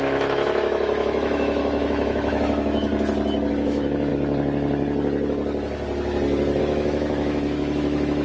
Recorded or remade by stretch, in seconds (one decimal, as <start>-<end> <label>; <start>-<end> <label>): 0.0-2.9 remade; 2.9-3.5 recorded; 3.5-4.1 remade; 4.1-6.6 recorded; 6.6-8.2 remade